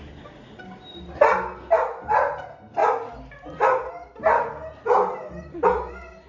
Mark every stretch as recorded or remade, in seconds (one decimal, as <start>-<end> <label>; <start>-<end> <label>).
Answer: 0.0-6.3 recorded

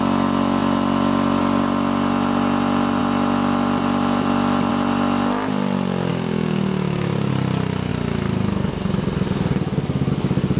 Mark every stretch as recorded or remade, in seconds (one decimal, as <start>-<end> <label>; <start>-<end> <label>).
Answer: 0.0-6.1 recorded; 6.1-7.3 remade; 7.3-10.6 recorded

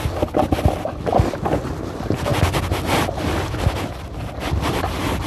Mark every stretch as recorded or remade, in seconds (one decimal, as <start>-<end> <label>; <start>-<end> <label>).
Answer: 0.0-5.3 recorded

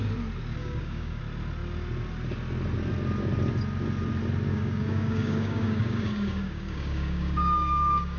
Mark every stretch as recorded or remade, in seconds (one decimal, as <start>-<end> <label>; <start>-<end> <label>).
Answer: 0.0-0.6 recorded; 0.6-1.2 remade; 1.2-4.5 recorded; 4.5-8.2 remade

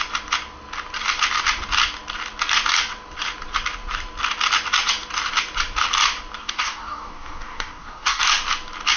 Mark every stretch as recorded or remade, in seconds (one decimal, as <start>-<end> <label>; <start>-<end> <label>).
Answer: 0.0-6.4 recorded; 6.4-8.2 remade; 8.2-9.0 recorded

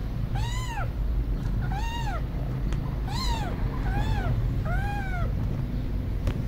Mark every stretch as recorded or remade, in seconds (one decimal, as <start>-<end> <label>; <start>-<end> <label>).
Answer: 0.0-6.5 recorded

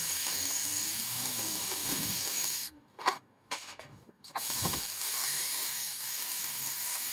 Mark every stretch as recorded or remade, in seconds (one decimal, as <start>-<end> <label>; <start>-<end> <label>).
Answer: 0.0-7.1 remade